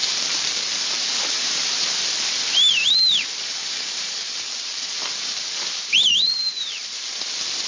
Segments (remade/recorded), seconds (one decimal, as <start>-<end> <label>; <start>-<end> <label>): 0.0-1.7 remade; 1.7-2.7 recorded; 2.7-7.1 remade; 7.1-7.7 recorded